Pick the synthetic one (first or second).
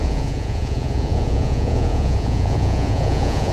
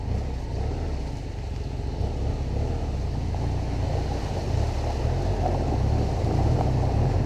first